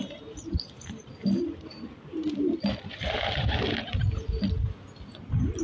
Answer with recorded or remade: recorded